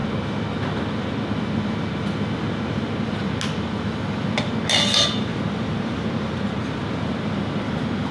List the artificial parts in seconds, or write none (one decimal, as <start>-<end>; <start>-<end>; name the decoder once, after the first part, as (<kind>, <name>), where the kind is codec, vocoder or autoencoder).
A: 5.3-7.0 (vocoder, BigVGAN v2)